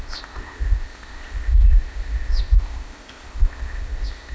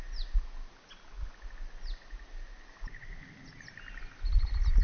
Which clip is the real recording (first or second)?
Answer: second